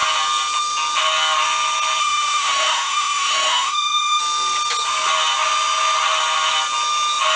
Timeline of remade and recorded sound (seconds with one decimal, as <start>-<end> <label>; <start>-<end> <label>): 0.0-2.0 recorded; 2.0-4.2 remade; 4.2-7.4 recorded